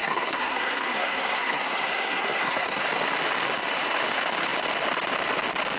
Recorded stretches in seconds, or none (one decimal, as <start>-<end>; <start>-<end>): 2.8-5.8